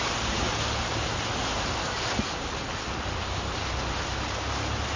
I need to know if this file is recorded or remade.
recorded